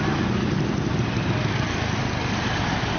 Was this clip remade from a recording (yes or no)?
no